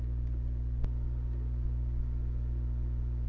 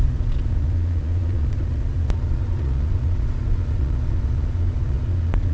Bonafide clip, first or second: first